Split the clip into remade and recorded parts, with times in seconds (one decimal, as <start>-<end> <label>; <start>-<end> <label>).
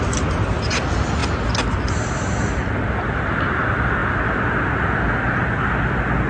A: 0.0-6.3 recorded